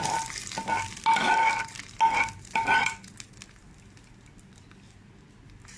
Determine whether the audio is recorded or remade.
recorded